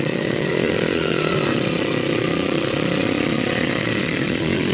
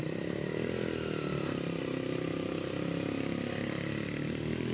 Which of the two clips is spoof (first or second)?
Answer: first